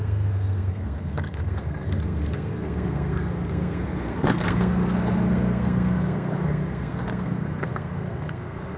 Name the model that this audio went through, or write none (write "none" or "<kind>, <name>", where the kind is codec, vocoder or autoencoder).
codec, SNAC